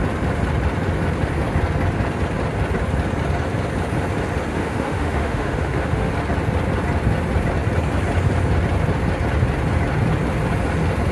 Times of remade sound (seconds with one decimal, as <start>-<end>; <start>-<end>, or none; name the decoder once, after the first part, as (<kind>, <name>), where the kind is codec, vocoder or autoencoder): 4.5-6.1 (autoencoder, DAC-VAE)

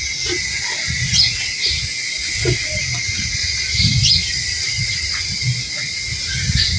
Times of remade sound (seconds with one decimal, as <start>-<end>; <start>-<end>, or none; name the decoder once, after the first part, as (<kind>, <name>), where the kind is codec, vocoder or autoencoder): 3.4-5.3 (vocoder, BigVGAN v2)

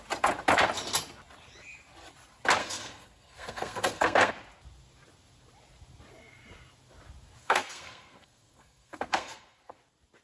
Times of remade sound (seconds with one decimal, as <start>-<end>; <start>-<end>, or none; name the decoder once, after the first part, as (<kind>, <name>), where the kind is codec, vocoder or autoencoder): 2.6-4.3 (codec, SNAC); 7.4-9.7

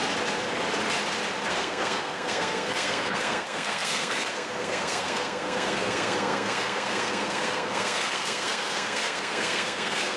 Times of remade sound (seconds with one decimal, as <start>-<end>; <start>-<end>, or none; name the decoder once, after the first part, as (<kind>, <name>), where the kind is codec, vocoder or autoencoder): 1.5-10.2 (codec, SNAC)